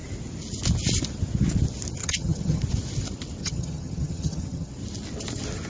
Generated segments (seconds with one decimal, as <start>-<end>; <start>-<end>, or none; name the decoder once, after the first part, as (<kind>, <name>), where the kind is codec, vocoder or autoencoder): 2.0-2.6 (vocoder, HiFi-GAN); 3.4-4.7